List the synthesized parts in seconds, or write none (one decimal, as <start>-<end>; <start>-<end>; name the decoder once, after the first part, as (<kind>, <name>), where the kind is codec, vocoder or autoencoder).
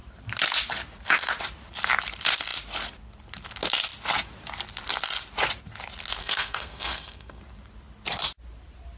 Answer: 6.2-7.4 (codec, SNAC)